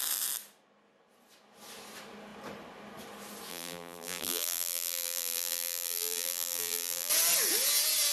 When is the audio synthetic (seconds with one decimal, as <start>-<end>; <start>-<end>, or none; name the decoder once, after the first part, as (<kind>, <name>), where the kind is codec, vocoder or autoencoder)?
3.5-7.1 (vocoder, BigVGAN v2)